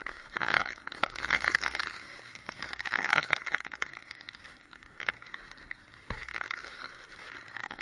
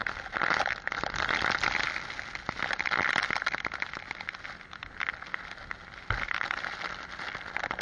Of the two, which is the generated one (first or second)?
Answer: first